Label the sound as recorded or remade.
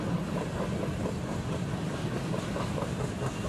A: recorded